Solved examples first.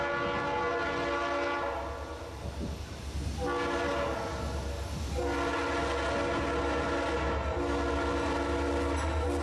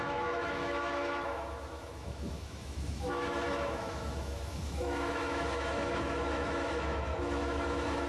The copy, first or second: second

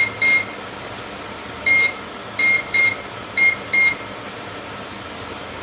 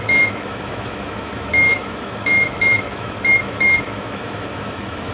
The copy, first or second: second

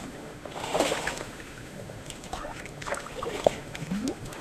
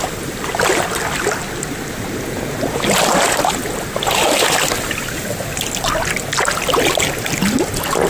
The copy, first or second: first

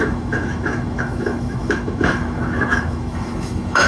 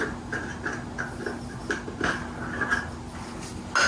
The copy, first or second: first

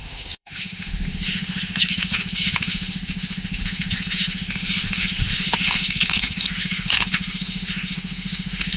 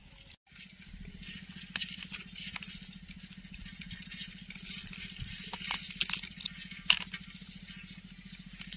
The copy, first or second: first